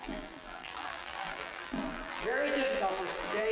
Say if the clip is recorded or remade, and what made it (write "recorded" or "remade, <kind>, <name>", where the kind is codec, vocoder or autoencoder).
remade, vocoder, BigVGAN v2